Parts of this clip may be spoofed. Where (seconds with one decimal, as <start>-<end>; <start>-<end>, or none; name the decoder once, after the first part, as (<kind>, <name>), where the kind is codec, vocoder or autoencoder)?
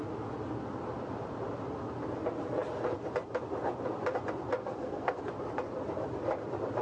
4.6-5.2 (codec, SNAC)